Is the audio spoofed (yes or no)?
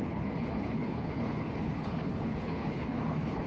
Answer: yes